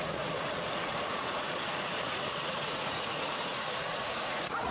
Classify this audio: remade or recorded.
remade